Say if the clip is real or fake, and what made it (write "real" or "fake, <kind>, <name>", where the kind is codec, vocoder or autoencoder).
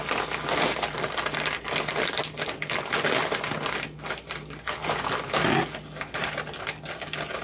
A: real